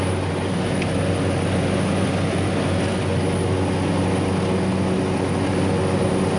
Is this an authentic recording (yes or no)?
yes